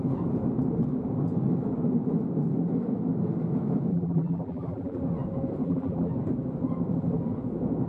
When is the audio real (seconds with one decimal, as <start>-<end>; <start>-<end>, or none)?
0.0-3.9; 5.0-5.6; 6.1-7.9